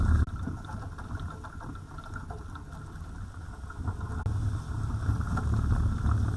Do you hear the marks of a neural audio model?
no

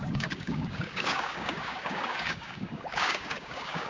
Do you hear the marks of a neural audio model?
yes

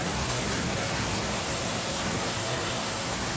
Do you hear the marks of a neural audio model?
yes